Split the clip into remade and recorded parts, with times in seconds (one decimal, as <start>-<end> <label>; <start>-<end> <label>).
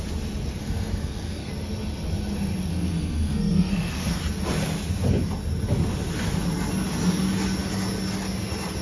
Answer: 0.0-0.6 recorded; 0.6-1.5 remade; 1.5-2.7 recorded; 2.7-4.2 remade; 4.2-8.8 recorded